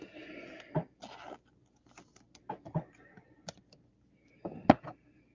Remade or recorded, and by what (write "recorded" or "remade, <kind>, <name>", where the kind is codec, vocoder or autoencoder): recorded